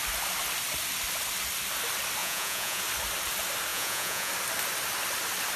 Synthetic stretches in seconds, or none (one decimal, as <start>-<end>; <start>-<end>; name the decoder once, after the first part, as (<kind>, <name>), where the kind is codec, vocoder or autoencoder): 2.2-2.8 (vocoder, Vocos); 3.7-4.3